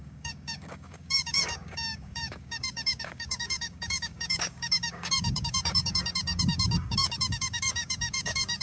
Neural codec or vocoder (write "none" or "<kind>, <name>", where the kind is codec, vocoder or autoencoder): codec, DAC